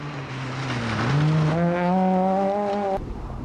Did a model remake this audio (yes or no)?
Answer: no